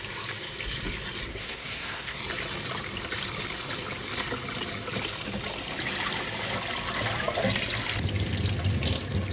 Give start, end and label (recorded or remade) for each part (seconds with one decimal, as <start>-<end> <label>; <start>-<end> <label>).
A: 0.0-1.3 recorded; 1.3-2.2 remade; 2.2-9.3 recorded